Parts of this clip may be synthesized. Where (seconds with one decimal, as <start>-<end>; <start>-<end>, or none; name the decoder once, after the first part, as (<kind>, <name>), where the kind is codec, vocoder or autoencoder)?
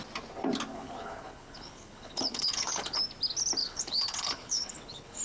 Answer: 0.7-3.0 (codec, HILCodec); 3.6-5.2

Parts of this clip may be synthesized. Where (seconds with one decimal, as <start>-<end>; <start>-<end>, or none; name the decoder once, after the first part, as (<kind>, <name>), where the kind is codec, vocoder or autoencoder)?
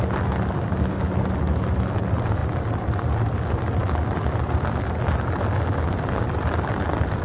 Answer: none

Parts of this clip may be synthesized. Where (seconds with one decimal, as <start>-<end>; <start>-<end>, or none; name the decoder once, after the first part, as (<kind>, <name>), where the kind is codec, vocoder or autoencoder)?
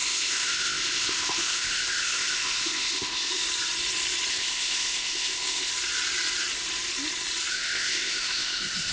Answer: 0.0-3.4 (codec, ZipCodec); 4.3-5.7; 7.5-8.9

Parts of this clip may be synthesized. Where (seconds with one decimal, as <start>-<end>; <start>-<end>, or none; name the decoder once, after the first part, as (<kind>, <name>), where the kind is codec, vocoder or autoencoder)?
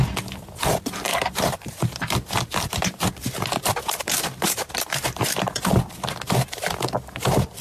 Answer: 1.1-5.6 (vocoder, BigVGAN v2)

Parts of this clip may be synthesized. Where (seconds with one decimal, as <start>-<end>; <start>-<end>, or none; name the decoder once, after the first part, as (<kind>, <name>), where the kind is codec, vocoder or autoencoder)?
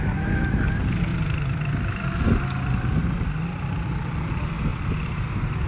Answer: 1.1-2.2 (vocoder, BigVGAN v2); 4.7-5.7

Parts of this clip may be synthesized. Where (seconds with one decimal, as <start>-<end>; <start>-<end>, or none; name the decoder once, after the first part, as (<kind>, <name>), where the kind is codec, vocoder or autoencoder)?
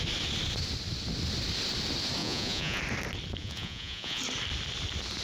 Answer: 2.2-2.8 (vocoder, Vocos); 3.4-4.2